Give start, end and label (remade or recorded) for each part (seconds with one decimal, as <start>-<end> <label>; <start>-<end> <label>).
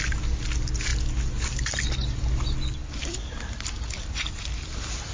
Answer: 0.0-5.1 recorded